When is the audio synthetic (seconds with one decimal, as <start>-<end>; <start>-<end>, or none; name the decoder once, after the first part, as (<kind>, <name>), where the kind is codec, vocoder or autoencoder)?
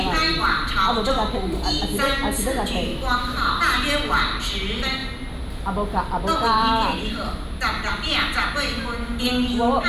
none